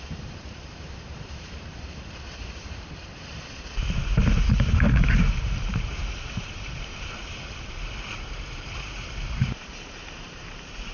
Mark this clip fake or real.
fake